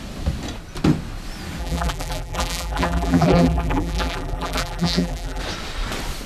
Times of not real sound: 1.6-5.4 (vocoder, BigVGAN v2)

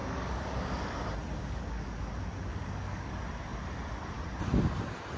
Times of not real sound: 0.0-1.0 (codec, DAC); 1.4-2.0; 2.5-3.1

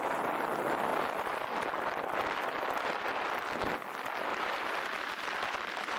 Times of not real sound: 0.9-1.4 (vocoder, BigVGAN v2); 4.3-5.1

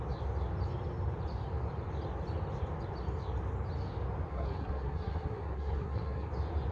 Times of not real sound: 4.3-6.3 (codec, SNAC)

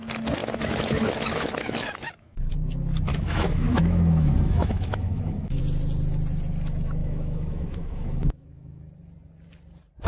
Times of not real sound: 0.4-2.5 (autoencoder, DAC-VAE); 3.1-5.6; 7.0-8.9

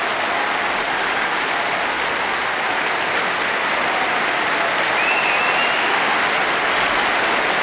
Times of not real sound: 5.8-6.3 (autoencoder, DAC-VAE)

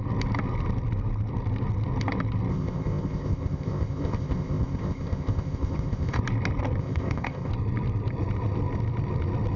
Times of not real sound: 2.5-6.2 (codec, ZipCodec); 6.8-7.5